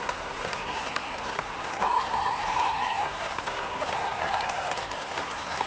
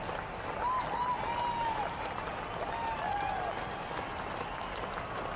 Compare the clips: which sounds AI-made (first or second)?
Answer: first